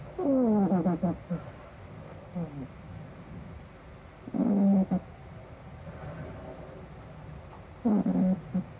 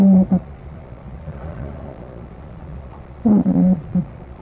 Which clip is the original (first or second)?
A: first